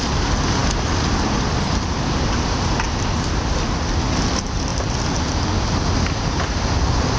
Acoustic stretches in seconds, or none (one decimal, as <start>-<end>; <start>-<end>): 0.0-7.2